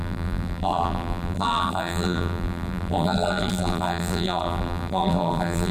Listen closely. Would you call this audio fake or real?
fake